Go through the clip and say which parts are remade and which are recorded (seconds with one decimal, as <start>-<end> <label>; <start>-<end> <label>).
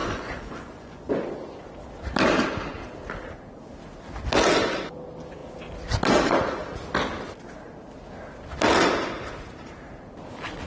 0.0-1.1 remade; 1.1-10.7 recorded